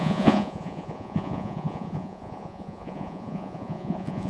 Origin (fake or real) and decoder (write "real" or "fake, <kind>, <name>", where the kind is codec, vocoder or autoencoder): fake, vocoder, Vocos